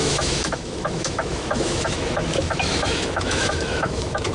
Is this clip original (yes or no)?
no